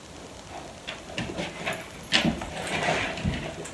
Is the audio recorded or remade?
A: recorded